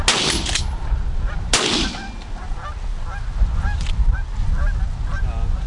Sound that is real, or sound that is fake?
real